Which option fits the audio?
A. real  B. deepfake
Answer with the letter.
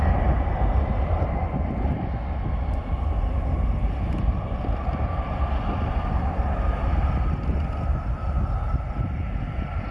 A